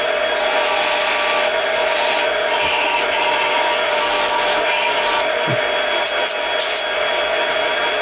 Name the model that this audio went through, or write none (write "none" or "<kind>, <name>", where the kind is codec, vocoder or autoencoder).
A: none